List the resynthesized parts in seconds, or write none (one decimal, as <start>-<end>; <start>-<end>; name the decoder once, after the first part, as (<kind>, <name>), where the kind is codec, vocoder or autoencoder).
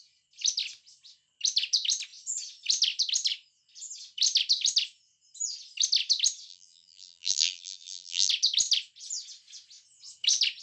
6.5-8.3 (vocoder, BigVGAN v2)